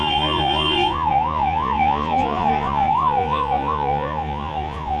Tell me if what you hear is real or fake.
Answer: fake